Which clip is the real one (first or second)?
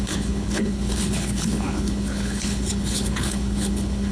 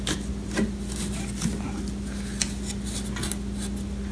second